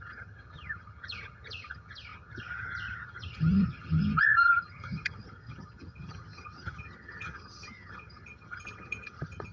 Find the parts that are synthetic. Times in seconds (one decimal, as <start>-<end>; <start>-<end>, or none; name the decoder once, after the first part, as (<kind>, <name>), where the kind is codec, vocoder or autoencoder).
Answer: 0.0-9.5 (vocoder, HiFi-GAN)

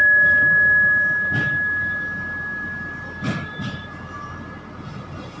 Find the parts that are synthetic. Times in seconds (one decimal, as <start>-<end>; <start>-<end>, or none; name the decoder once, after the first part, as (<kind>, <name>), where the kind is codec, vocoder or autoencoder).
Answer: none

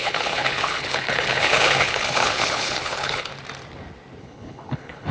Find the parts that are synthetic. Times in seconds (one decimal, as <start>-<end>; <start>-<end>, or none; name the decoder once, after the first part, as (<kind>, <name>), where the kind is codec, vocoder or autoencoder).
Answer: 0.0-3.3 (codec, HILCodec); 4.2-5.1

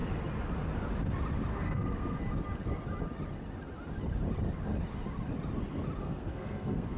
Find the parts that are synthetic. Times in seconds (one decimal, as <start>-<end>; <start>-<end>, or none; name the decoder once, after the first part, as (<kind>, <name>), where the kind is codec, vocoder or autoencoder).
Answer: 1.5-2.2 (codec, SNAC); 6.0-7.0